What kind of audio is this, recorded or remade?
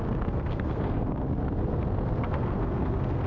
remade